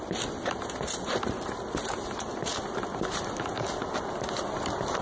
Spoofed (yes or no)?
no